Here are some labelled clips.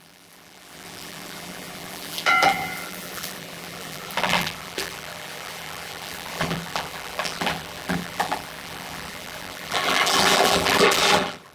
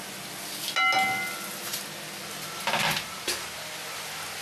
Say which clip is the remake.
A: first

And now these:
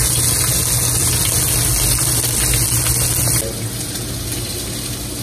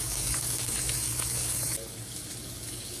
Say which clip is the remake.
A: second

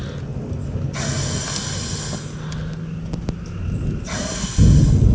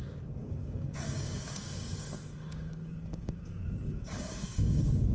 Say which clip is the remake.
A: second